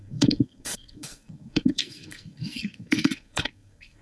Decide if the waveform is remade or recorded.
remade